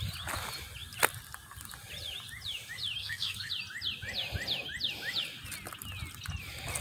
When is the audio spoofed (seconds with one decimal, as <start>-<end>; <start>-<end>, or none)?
3.0-3.5